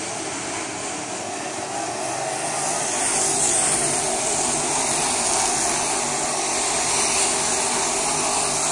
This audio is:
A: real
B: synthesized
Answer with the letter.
A